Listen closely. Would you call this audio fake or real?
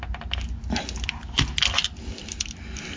real